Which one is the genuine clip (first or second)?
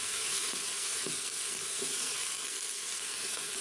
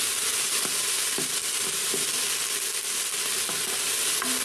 second